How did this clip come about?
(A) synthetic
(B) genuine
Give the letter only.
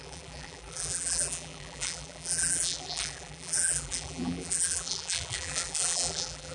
A